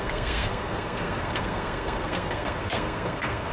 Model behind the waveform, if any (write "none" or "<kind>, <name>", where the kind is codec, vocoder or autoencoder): codec, SNAC